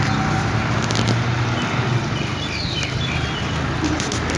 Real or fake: real